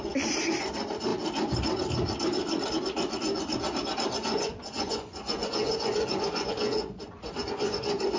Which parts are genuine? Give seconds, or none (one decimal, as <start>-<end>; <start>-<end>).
0.0-4.2